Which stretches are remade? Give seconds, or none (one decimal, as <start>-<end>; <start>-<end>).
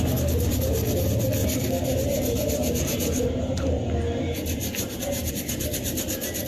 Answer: 1.4-5.3